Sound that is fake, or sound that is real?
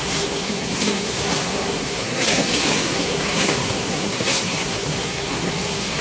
fake